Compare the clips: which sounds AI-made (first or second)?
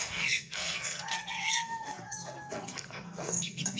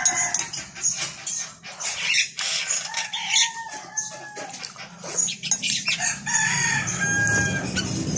first